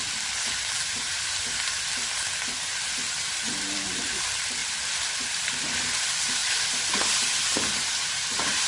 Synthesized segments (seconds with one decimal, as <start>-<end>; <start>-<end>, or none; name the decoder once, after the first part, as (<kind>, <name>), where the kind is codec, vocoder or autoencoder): 0.0-8.7 (vocoder, BigVGAN v2)